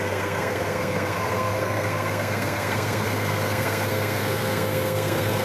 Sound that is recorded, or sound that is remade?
remade